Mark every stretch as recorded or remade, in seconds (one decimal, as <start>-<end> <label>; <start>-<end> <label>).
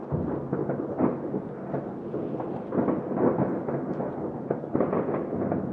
0.0-5.7 recorded